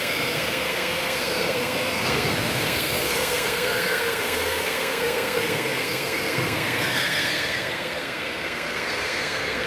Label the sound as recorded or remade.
remade